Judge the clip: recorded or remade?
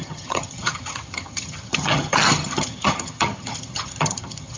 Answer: remade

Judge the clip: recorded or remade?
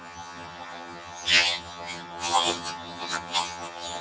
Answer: remade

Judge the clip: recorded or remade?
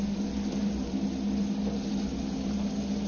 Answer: recorded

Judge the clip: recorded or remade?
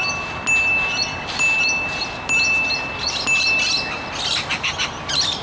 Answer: recorded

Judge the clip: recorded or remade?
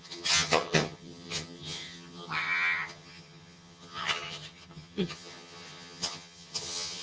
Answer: remade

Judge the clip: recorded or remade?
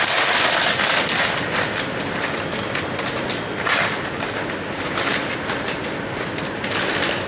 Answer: recorded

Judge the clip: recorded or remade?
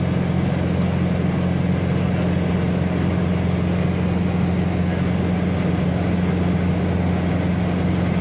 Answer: recorded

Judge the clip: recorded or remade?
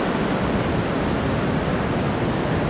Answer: recorded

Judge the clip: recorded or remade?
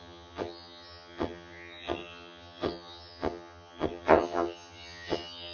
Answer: remade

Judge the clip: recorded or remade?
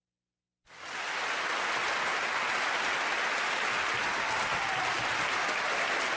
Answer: recorded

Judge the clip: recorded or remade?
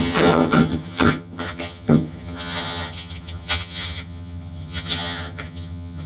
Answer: remade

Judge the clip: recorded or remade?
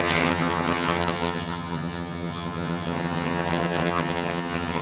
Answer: remade